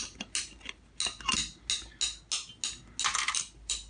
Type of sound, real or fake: real